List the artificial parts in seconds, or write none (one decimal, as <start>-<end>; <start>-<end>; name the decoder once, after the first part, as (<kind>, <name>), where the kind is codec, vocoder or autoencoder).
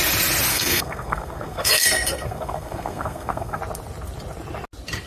0.5-3.6 (codec, SNAC)